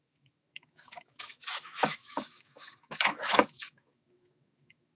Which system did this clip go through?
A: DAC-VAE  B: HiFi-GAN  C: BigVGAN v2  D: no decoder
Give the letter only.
A